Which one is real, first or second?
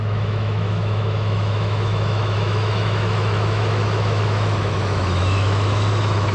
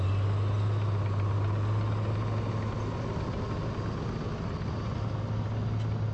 second